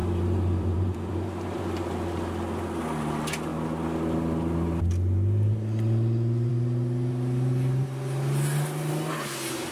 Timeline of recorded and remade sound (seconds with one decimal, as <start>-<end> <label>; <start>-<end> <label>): 0.0-1.6 remade; 1.6-9.7 recorded